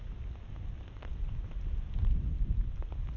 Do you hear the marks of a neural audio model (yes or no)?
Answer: no